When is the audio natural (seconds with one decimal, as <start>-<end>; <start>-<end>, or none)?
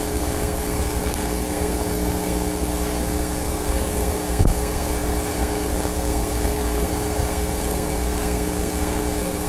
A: none